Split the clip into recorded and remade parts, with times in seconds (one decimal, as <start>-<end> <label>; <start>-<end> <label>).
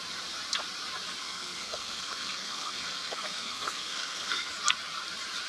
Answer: 0.0-1.2 recorded; 1.2-4.5 remade; 4.5-5.5 recorded